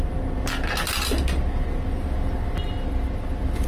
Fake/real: real